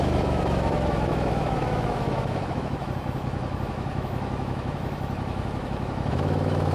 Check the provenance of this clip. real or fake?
fake